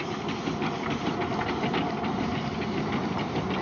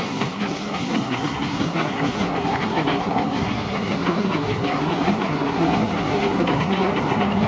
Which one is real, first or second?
first